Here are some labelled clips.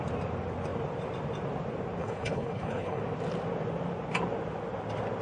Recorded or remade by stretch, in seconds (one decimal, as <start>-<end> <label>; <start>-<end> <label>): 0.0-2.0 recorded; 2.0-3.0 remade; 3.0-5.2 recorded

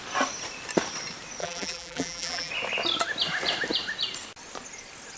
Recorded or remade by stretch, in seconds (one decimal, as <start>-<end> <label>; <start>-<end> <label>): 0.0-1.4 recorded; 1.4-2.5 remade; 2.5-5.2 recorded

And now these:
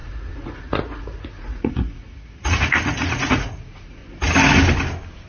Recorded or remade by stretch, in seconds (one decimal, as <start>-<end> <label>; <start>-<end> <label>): 0.0-4.0 remade; 4.0-5.3 recorded